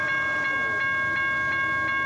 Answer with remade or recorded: recorded